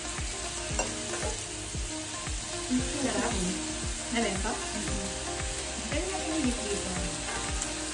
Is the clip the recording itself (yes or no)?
yes